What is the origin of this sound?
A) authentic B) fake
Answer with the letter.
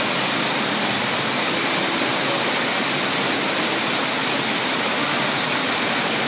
A